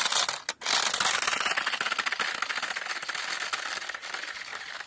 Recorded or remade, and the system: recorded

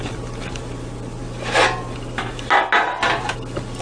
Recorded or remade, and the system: recorded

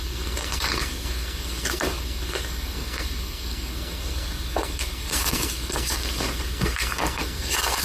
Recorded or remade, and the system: remade, codec, SNAC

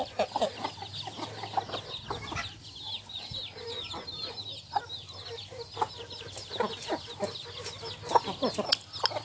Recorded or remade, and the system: recorded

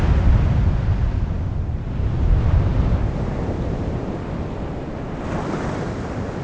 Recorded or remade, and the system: recorded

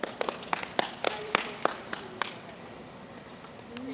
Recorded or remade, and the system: recorded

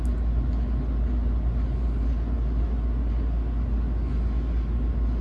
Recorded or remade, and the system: recorded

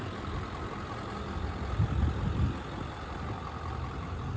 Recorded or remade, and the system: recorded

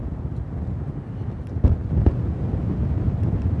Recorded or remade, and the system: recorded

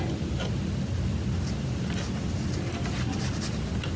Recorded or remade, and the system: recorded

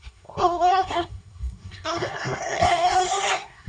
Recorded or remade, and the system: remade, codec, SNAC